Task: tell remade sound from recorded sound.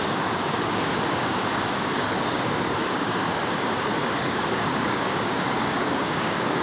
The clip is remade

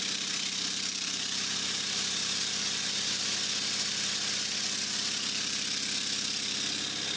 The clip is recorded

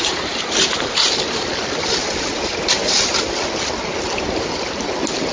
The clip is recorded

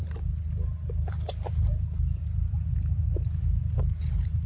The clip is recorded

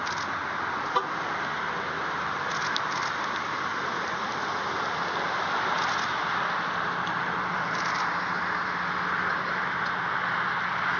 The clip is recorded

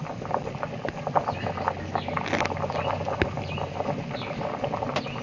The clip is recorded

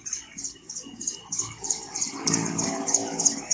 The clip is remade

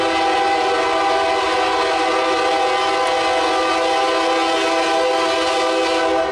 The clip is recorded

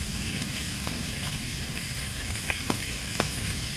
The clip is remade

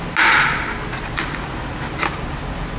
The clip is recorded